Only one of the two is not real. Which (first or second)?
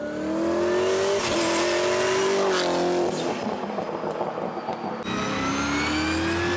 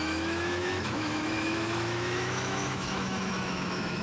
second